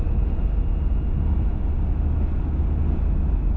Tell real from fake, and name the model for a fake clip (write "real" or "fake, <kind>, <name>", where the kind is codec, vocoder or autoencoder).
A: real